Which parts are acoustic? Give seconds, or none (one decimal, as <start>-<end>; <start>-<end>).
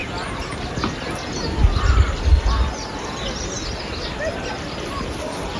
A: 0.0-5.6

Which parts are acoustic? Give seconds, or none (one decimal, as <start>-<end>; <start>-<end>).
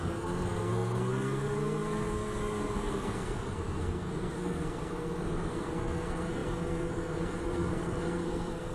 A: none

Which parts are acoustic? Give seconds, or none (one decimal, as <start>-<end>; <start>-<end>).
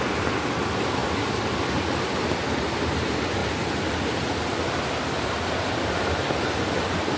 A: 0.0-7.2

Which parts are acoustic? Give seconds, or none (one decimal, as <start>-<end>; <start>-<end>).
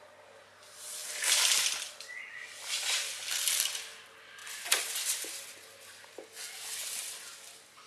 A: 0.0-7.9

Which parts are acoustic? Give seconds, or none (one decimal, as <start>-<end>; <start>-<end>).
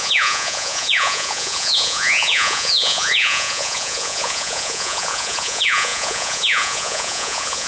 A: none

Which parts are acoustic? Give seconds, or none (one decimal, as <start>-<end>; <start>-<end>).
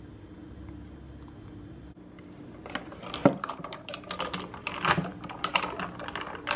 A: 0.0-3.2; 4.0-5.1; 5.6-6.6